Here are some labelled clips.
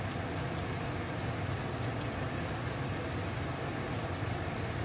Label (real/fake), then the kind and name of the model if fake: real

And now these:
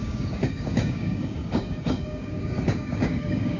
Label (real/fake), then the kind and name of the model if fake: fake, codec, DAC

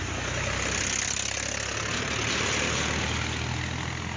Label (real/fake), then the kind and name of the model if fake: real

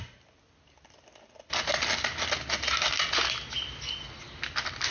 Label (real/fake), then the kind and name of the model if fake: real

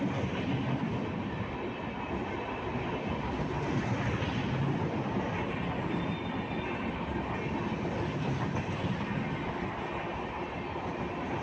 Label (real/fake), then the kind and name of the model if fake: real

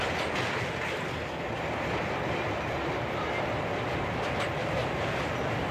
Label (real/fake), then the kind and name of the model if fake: real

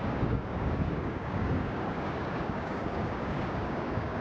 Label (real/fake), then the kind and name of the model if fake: fake, codec, DAC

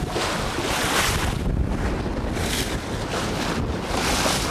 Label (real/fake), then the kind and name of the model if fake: real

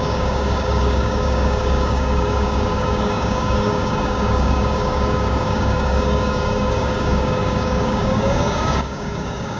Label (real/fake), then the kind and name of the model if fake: fake, codec, DAC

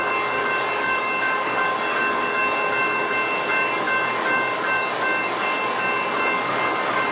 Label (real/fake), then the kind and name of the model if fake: fake, codec, DAC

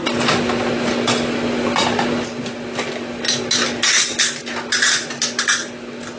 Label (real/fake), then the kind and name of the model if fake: real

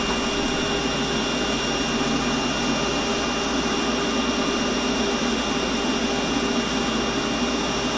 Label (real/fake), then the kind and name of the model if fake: real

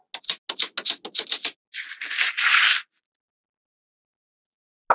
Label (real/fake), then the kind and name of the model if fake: real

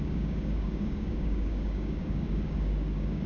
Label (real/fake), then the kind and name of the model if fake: fake, codec, DAC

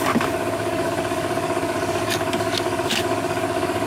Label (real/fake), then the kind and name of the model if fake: fake, codec, DAC